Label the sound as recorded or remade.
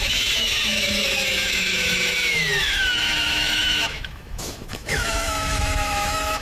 remade